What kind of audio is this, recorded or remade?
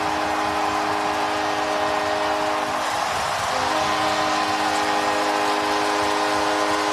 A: recorded